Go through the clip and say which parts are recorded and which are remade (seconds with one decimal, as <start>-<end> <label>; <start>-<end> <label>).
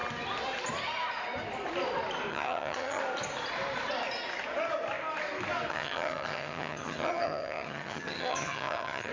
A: 0.0-2.3 recorded; 2.3-3.0 remade; 3.0-5.7 recorded; 5.7-9.1 remade